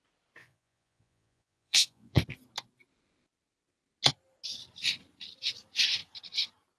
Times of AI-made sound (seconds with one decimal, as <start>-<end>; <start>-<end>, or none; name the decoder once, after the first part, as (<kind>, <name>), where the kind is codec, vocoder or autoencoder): 0.4-2.2 (vocoder, Vocos)